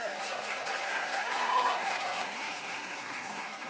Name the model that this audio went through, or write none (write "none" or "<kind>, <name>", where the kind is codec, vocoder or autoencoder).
codec, SNAC